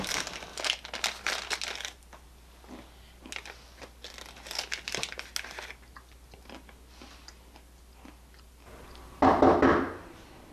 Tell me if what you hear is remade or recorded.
recorded